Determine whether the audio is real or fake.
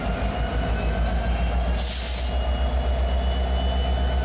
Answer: real